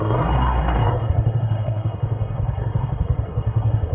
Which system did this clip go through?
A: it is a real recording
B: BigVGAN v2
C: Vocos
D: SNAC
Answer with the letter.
D